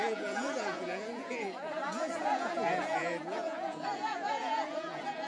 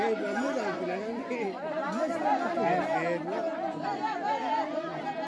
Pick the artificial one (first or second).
first